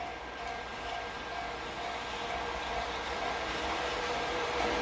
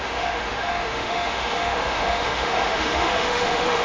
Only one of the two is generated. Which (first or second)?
second